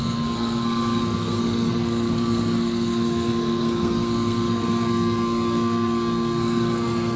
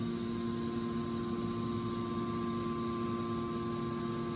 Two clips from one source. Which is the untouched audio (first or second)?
second